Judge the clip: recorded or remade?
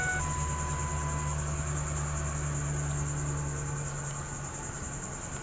recorded